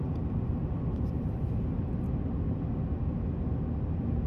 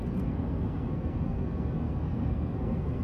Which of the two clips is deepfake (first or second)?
second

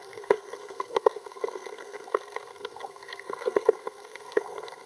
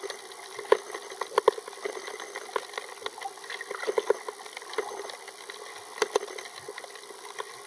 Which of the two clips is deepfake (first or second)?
first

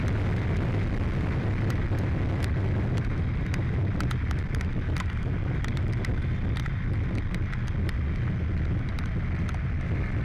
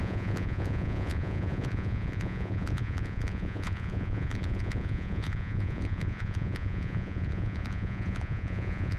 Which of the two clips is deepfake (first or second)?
second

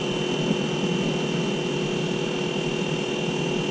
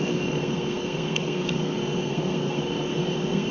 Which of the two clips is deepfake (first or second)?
second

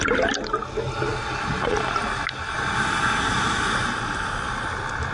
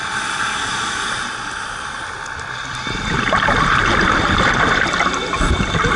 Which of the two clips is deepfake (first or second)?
second